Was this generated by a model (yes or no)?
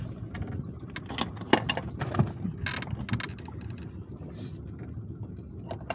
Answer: no